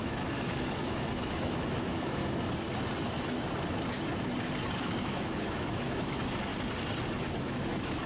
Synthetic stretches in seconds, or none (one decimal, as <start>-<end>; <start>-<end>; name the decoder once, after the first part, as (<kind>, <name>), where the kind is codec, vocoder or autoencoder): 0.0-2.2 (autoencoder, DAC-VAE); 4.8-6.5; 7.4-8.1